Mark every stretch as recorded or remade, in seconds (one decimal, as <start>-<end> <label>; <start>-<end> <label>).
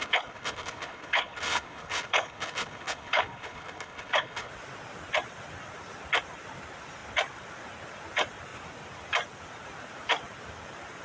0.0-4.5 remade; 4.5-11.0 recorded